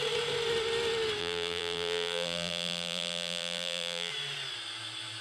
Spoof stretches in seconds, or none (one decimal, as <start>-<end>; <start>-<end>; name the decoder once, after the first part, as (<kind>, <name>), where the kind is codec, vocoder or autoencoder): 1.2-4.1 (vocoder, BigVGAN v2)